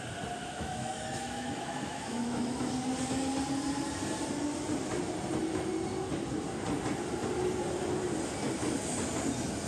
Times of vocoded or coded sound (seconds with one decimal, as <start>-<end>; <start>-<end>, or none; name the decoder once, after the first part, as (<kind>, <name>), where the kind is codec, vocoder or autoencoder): 0.4-2.7 (autoencoder, DAC-VAE)